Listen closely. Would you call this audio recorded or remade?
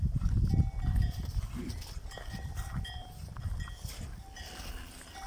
recorded